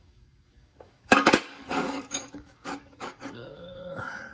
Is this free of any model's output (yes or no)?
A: no